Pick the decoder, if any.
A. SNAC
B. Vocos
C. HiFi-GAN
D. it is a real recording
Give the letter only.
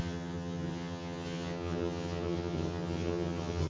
C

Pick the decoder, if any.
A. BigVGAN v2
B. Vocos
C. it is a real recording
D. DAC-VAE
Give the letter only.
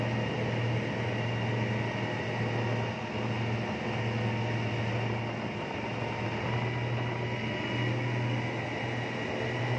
C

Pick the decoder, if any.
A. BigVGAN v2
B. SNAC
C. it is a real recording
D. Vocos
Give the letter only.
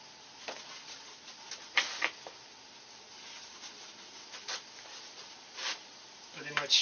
C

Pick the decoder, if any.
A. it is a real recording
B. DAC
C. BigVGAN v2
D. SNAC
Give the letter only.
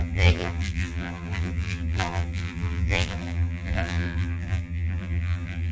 C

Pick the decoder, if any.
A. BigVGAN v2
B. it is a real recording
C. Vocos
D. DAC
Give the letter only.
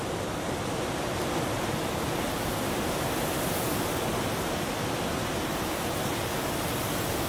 B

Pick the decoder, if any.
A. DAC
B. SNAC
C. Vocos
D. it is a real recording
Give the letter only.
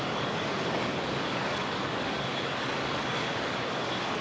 A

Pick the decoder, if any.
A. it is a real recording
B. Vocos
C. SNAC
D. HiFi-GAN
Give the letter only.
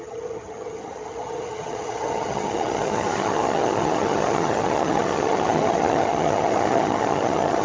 D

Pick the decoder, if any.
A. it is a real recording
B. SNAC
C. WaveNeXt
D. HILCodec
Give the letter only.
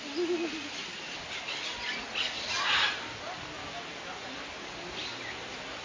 A